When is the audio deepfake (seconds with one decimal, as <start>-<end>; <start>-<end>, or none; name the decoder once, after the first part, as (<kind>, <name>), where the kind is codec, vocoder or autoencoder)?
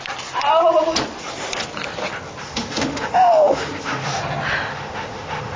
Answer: 2.4-4.2 (autoencoder, DAC-VAE); 4.7-5.6